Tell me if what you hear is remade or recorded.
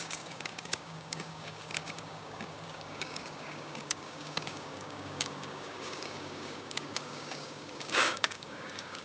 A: remade